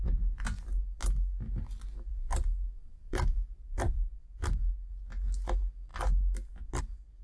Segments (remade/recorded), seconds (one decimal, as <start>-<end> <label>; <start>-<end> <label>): 0.0-2.1 recorded; 2.1-4.1 remade; 4.1-7.2 recorded